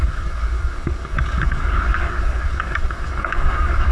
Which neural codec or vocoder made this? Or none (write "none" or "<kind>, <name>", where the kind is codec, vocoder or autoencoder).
codec, DAC